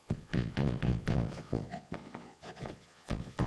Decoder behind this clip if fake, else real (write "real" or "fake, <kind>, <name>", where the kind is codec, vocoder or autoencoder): fake, vocoder, Vocos